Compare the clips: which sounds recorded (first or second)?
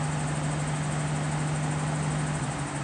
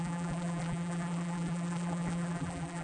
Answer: first